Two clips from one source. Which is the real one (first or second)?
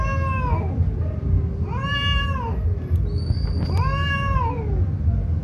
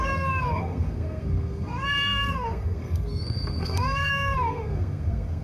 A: first